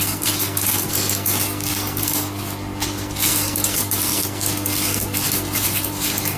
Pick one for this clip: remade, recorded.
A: remade